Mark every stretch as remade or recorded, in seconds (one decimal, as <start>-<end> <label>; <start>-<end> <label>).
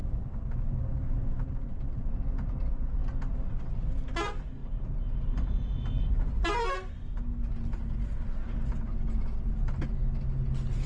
0.0-10.9 recorded